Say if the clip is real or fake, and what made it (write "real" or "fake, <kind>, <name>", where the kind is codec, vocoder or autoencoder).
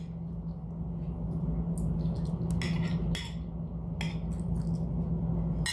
real